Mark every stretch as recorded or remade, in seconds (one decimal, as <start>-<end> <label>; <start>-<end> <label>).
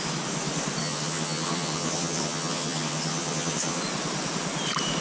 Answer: 0.0-0.8 recorded; 0.8-3.8 remade; 3.8-5.0 recorded